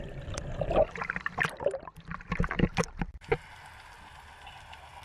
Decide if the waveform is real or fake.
real